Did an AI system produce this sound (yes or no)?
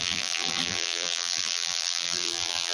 yes